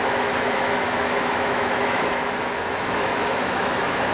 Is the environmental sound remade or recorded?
remade